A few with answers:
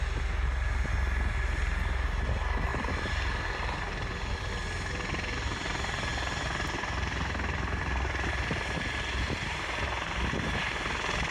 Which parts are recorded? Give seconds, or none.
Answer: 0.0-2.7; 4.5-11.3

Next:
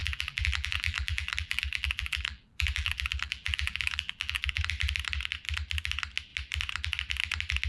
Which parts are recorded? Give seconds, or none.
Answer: 4.6-7.7

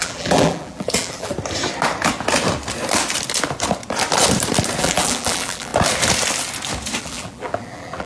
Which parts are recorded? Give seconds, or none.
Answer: 1.3-4.8; 5.7-7.0

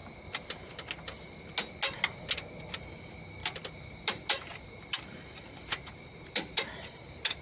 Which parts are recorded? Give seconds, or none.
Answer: 0.0-3.4

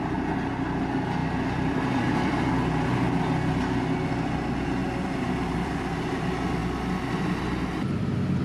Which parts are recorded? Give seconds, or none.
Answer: 0.0-1.2; 2.5-4.8; 5.9-8.4

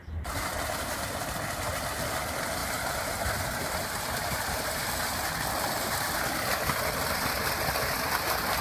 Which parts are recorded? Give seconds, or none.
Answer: 0.0-2.6; 5.3-8.6

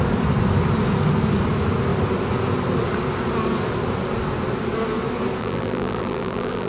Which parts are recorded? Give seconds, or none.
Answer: 0.0-5.4